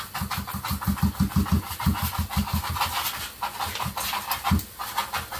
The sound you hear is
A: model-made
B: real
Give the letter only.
B